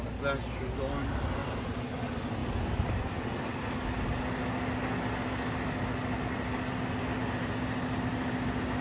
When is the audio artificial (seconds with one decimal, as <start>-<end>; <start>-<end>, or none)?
none